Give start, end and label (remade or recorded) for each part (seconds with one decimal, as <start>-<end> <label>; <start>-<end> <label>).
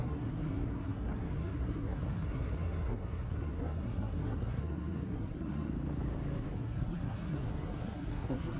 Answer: 0.0-5.7 remade; 5.7-6.5 recorded; 6.5-8.6 remade